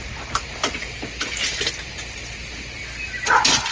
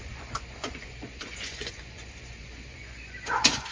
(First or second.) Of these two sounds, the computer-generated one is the second